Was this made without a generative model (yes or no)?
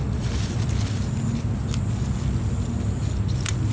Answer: yes